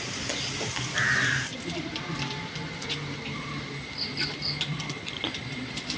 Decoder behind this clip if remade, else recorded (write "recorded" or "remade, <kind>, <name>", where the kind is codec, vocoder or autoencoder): recorded